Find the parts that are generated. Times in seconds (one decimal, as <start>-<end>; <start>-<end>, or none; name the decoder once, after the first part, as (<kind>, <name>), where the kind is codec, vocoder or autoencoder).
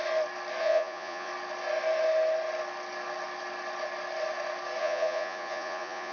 0.6-1.3 (vocoder, Vocos); 4.8-6.1